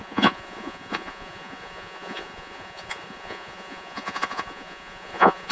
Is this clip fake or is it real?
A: fake